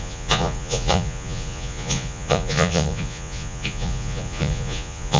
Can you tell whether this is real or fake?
fake